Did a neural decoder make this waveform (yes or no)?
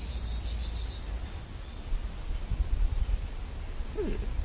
no